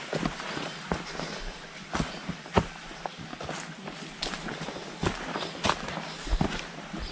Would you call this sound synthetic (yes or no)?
no